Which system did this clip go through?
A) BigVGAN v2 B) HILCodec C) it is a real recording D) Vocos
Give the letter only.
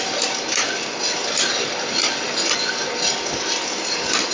C